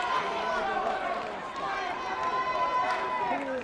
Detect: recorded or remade recorded